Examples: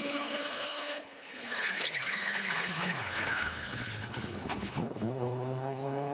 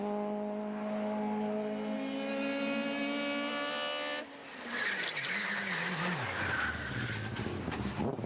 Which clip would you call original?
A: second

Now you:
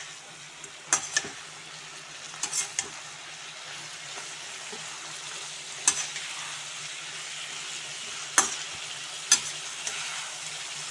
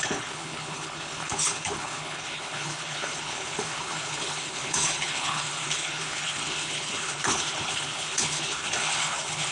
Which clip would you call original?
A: first